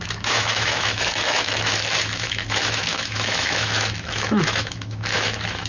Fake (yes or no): yes